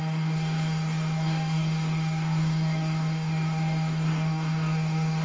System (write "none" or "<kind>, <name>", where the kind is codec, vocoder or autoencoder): codec, DAC